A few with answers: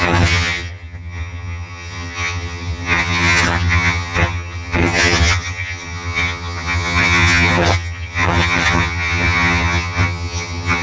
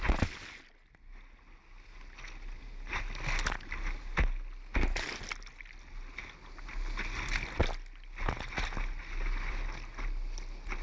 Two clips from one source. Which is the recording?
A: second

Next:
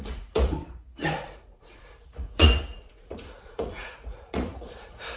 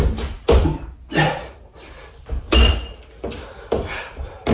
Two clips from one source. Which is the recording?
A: second